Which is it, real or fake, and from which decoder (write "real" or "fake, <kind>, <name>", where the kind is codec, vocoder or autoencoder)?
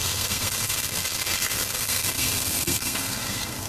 fake, codec, SNAC